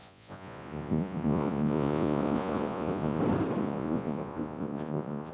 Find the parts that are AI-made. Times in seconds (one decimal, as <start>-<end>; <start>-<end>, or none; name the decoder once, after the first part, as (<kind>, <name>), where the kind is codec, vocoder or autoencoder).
0.0-3.2 (vocoder, Vocos); 3.6-5.3